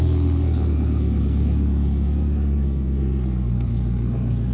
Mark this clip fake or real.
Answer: fake